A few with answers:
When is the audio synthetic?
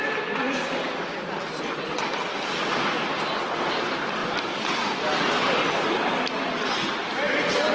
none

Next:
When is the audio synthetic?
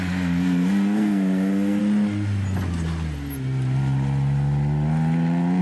0.0-1.8 (codec, SNAC)